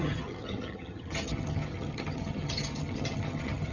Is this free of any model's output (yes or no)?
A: no